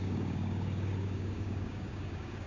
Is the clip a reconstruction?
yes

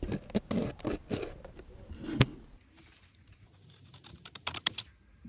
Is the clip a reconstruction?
no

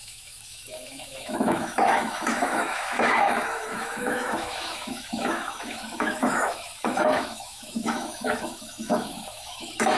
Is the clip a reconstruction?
yes